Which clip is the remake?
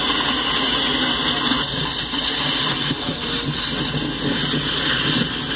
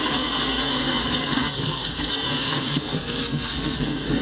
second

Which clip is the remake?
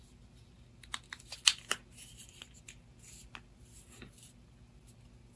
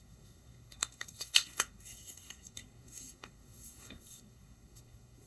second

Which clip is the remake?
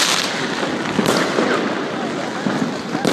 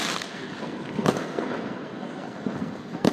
second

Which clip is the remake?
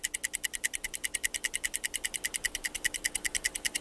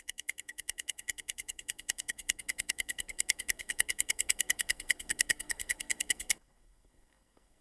second